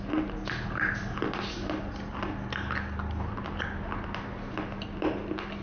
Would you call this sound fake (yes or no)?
no